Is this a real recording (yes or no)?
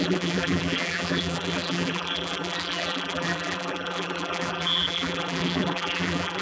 no